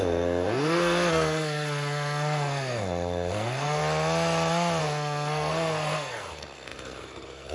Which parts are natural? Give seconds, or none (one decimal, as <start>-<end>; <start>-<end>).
3.8-4.8